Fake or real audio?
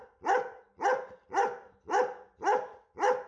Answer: real